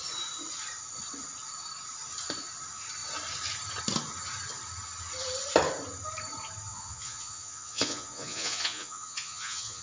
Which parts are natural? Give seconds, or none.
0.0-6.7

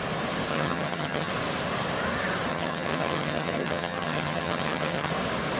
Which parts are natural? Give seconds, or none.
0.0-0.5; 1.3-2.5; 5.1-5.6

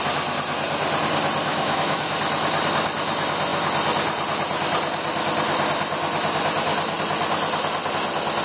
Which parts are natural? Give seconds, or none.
0.0-1.5; 2.1-8.4

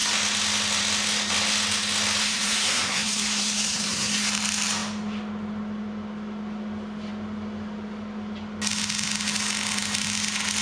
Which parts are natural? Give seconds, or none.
0.0-2.2; 4.3-10.6

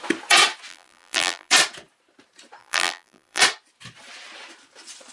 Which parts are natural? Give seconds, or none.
0.0-0.7; 1.5-2.6; 3.4-5.1

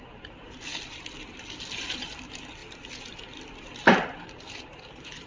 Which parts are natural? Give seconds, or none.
0.7-1.7; 2.6-3.8

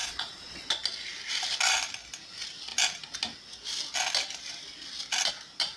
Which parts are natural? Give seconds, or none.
0.7-5.8